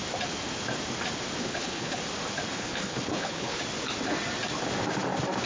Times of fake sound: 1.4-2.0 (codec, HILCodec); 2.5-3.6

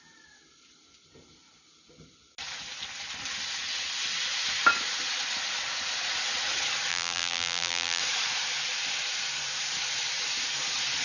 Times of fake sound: 6.9-8.0 (vocoder, BigVGAN v2)

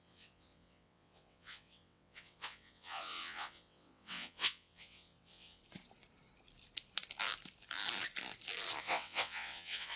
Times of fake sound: 0.0-5.6 (vocoder, WaveNeXt); 8.8-10.0

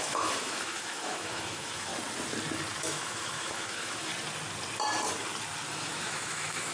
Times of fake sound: 0.0-1.9 (autoencoder, DAC-VAE); 2.8-4.1; 5.7-6.7

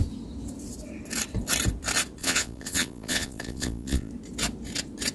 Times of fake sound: 2.2-4.1 (vocoder, Vocos)

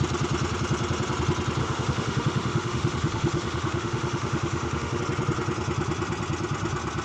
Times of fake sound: 1.6-5.0 (autoencoder, DAC-VAE)

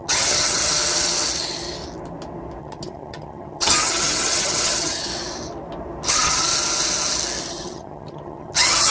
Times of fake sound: 0.0-0.6 (vocoder, HiFi-GAN); 2.6-5.1; 6.1-6.5; 7.5-8.9